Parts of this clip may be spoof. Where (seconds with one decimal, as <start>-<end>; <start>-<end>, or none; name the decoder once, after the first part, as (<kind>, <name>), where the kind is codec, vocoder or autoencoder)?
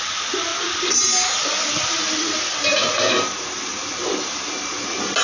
none